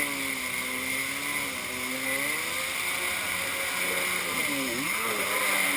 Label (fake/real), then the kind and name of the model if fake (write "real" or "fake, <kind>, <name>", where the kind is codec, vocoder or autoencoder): real